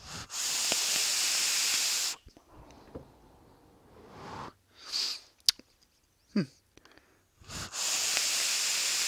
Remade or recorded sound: recorded